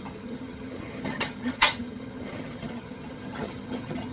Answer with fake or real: fake